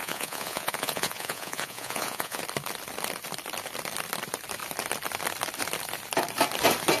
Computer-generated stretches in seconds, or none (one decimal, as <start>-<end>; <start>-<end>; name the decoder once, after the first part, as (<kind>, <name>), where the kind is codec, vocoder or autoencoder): 0.0-2.4 (vocoder, Vocos)

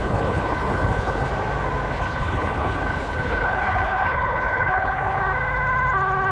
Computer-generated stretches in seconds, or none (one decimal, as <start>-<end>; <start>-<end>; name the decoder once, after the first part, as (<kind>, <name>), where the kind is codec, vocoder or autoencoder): 0.0-1.3 (codec, HILCodec); 1.9-5.2

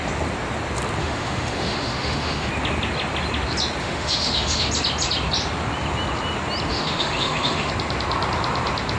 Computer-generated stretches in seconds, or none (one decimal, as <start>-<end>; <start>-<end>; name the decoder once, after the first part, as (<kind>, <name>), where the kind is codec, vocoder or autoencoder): 1.0-2.5 (autoencoder, DAC-VAE); 3.8-4.7; 6.7-7.7

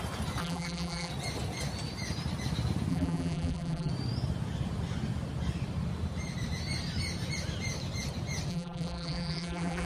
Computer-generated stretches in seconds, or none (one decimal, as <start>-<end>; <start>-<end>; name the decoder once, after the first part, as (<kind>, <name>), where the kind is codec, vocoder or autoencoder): 0.4-1.1 (vocoder, BigVGAN v2); 2.9-3.9; 8.5-9.9

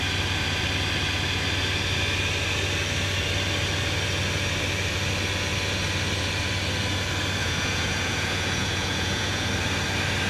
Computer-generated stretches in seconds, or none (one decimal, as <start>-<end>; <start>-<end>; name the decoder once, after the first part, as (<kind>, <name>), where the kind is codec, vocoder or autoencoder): 7.4-9.5 (vocoder, Vocos)

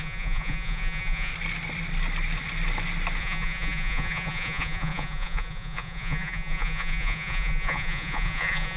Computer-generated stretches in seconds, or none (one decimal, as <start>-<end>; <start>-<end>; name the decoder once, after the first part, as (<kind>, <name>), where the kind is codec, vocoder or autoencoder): 0.0-1.3 (vocoder, Vocos); 3.2-8.8

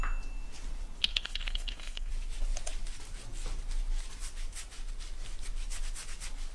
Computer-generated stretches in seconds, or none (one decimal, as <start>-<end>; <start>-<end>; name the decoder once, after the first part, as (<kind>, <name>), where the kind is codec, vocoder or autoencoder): 1.1-2.1 (codec, SNAC)

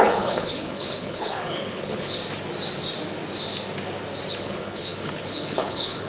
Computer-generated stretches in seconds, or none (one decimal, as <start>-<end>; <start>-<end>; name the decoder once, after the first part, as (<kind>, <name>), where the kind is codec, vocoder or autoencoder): 0.0-2.2 (codec, HILCodec); 4.3-6.1